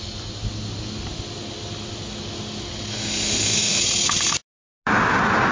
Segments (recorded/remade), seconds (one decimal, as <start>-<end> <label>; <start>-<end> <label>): 0.0-2.9 recorded; 2.9-3.8 remade; 3.8-5.5 recorded